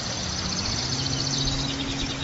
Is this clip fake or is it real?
real